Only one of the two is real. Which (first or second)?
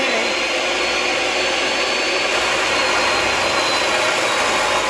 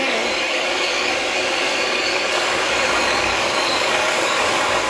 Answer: first